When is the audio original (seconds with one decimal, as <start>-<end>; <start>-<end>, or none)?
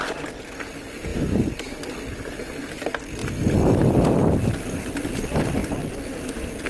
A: 0.0-6.7